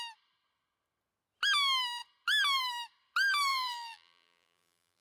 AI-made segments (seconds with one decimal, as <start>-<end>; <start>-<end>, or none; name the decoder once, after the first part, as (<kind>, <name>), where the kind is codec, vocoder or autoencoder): 3.5-5.0 (vocoder, BigVGAN v2)